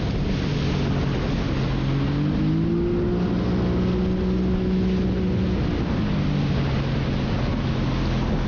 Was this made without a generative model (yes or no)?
yes